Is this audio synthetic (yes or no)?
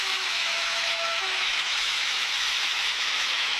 yes